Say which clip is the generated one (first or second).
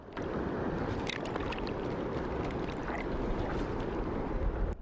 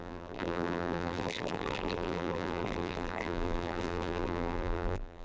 second